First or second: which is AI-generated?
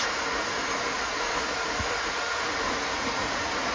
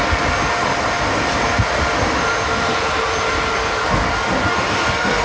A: first